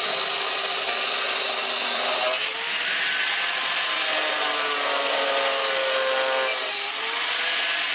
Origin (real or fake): real